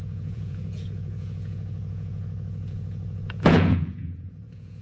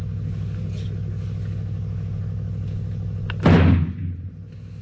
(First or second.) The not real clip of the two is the first